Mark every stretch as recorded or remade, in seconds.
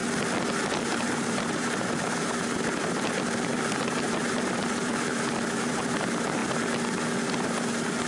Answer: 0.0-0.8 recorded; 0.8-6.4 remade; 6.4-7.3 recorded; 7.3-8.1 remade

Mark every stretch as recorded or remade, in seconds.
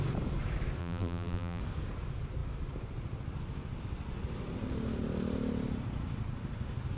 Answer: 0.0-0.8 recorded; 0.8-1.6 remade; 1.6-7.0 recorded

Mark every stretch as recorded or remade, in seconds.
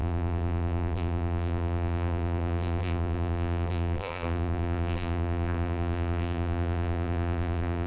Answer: 0.0-7.9 remade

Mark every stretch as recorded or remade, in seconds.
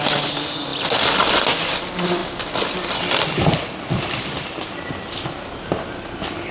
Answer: 0.0-6.5 recorded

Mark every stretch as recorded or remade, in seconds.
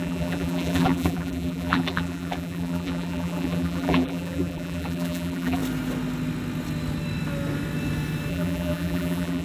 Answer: 0.0-5.6 remade; 5.6-8.3 recorded; 8.3-9.4 remade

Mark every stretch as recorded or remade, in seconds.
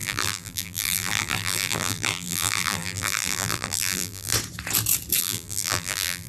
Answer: 0.0-4.3 remade; 4.3-5.2 recorded; 5.2-6.3 remade